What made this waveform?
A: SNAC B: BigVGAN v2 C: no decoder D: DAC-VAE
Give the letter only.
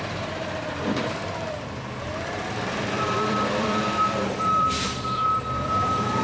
B